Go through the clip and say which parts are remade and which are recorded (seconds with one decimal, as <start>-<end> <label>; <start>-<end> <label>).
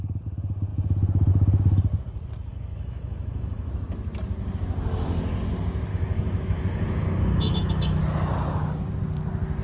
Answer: 0.0-2.5 recorded; 2.5-3.7 remade; 3.7-5.9 recorded; 5.9-8.0 remade; 8.0-9.6 recorded